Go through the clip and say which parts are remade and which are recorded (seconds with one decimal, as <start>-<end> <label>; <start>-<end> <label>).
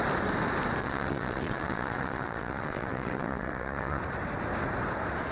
0.0-0.8 recorded; 0.8-4.0 remade; 4.0-5.3 recorded